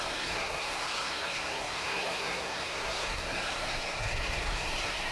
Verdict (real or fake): fake